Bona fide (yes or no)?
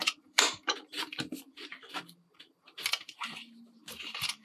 no